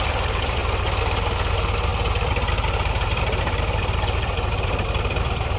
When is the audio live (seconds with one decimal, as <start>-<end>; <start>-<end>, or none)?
0.6-1.5

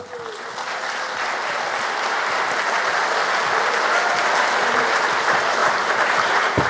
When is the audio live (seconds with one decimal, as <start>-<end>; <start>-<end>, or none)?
0.0-5.6

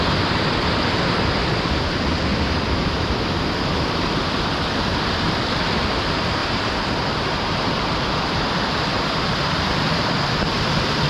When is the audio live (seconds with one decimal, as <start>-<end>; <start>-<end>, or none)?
none

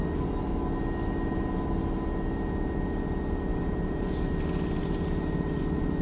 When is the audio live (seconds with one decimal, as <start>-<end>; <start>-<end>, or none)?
0.0-3.5; 4.3-4.8; 5.6-6.0

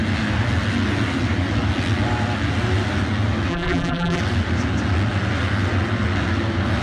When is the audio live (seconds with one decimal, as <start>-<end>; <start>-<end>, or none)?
0.0-3.5; 4.2-6.8